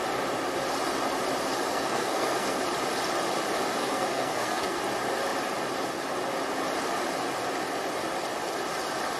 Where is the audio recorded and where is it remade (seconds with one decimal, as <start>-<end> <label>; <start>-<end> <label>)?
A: 0.0-1.7 recorded; 1.7-2.6 remade; 2.6-3.8 recorded; 3.8-4.8 remade; 4.8-9.2 recorded